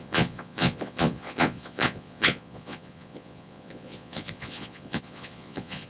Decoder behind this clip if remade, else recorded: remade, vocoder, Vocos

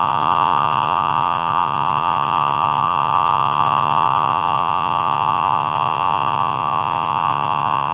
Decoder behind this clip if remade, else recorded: remade, vocoder, Vocos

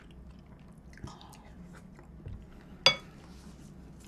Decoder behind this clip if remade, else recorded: recorded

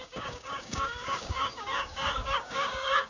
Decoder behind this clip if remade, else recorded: remade, codec, DAC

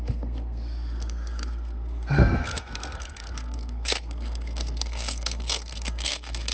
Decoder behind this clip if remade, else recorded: remade, codec, SNAC